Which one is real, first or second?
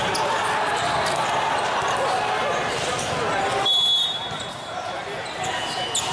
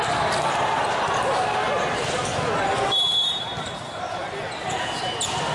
first